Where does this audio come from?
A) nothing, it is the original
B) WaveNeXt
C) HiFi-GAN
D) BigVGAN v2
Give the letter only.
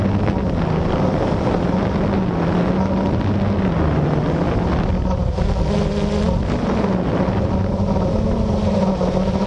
A